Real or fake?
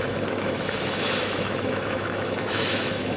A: fake